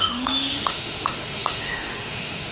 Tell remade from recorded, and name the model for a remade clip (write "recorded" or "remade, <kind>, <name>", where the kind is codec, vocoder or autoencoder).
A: remade, autoencoder, DAC-VAE